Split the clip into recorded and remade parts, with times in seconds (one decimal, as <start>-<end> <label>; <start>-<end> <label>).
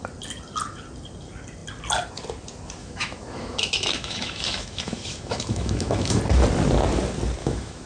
0.0-2.8 recorded; 2.8-6.2 remade; 6.2-7.4 recorded; 7.4-7.9 remade